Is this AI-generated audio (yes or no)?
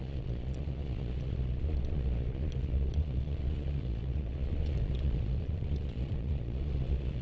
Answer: yes